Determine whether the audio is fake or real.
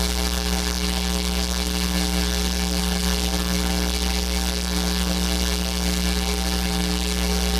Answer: fake